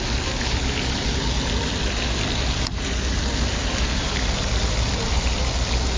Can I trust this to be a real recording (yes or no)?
yes